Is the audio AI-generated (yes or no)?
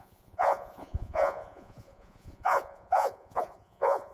yes